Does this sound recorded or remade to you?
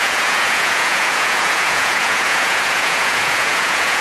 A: remade